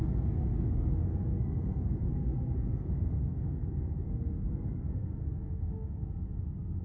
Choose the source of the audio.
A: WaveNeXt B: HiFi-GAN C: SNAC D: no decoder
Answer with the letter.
C